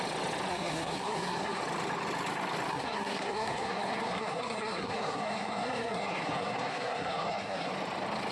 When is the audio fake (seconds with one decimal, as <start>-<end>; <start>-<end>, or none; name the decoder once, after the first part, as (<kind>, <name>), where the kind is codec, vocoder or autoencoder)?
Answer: 0.5-1.6 (codec, SNAC); 2.7-7.7